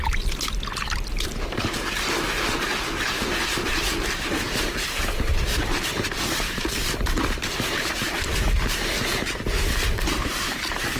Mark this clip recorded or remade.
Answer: remade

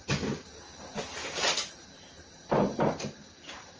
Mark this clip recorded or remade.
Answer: recorded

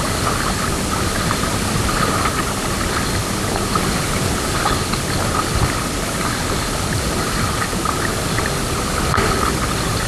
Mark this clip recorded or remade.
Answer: recorded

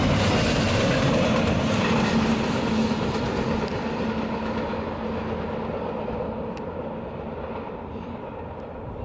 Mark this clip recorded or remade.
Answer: recorded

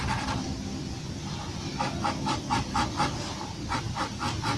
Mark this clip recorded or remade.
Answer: recorded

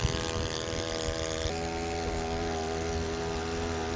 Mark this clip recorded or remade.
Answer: recorded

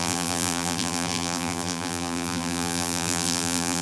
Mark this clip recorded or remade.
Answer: remade